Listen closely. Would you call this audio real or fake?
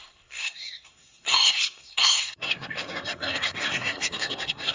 fake